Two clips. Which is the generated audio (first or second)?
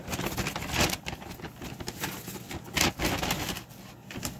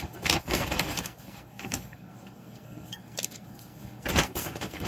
second